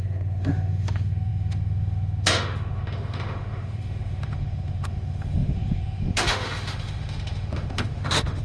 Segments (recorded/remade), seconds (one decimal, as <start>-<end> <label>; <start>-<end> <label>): 0.0-8.4 remade